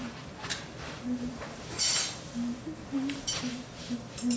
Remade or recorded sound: remade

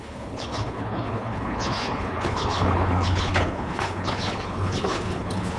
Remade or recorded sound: remade